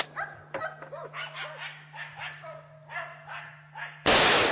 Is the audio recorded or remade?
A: recorded